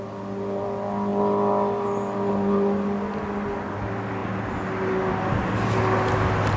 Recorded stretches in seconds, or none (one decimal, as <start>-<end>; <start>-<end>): 0.0-6.6